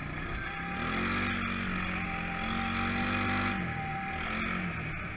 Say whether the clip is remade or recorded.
recorded